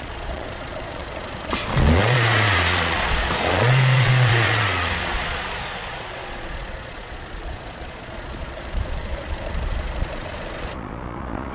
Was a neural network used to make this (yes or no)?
yes